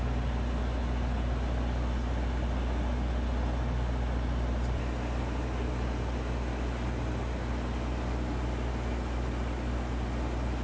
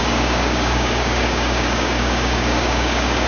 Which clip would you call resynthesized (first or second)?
second